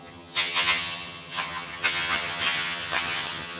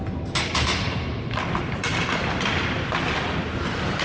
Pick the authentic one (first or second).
second